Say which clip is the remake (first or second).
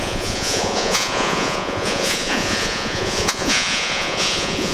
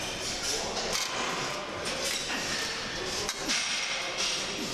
first